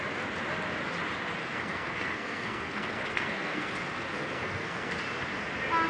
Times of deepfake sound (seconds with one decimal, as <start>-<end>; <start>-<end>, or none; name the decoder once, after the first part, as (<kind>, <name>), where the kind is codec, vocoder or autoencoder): 1.4-4.9 (codec, SNAC)